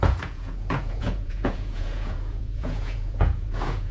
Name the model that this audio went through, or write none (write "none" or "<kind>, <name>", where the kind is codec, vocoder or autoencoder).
vocoder, Vocos